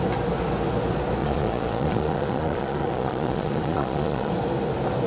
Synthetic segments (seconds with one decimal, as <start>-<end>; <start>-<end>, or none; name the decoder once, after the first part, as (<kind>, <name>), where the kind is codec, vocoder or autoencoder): 1.2-4.3 (vocoder, Vocos)